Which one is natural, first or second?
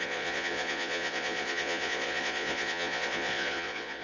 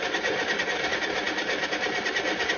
second